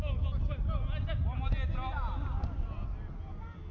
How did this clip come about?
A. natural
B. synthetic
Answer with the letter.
A